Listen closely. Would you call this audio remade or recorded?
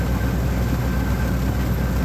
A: recorded